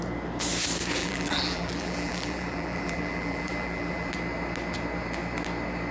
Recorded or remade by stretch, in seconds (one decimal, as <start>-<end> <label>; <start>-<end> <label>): 0.0-1.0 recorded; 1.0-4.1 remade; 4.1-5.9 recorded